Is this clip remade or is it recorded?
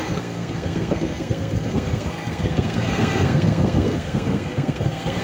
remade